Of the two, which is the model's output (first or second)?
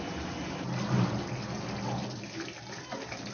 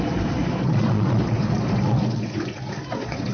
second